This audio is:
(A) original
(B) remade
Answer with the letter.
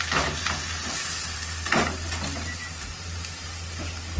A